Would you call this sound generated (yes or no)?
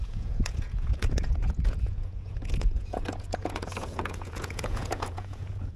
yes